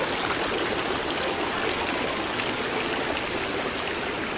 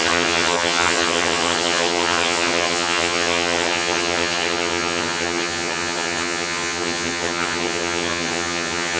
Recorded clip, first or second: first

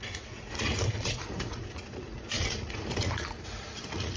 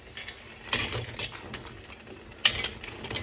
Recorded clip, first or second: second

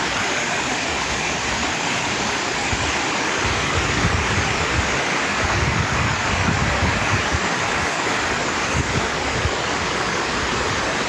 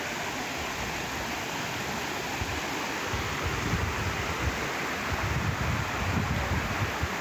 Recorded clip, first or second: second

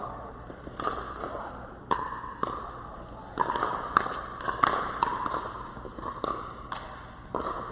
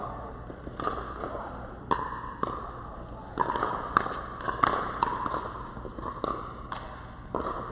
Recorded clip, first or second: second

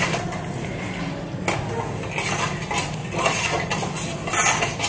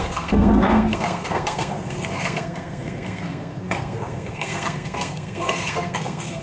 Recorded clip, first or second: first